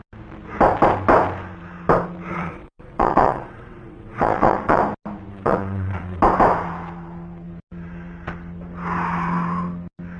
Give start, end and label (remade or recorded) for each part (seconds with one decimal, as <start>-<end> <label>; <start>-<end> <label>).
0.0-2.3 recorded; 2.3-4.8 remade; 4.8-5.3 recorded; 5.3-6.2 remade; 6.2-10.2 recorded